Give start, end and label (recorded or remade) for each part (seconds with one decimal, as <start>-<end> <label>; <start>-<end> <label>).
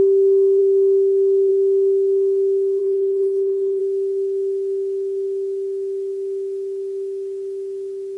0.0-2.8 recorded; 2.8-3.8 remade; 3.8-8.2 recorded